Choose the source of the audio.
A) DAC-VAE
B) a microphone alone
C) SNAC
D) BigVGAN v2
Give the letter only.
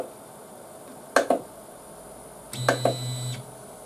B